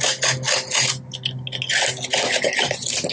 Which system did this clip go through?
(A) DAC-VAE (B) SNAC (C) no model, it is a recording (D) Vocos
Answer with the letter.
C